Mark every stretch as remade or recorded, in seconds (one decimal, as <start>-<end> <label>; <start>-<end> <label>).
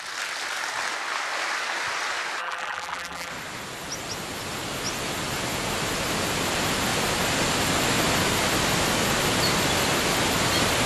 0.0-2.4 recorded; 2.4-3.3 remade; 3.3-10.9 recorded